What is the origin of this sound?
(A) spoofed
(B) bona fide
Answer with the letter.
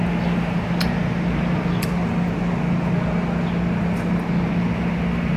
B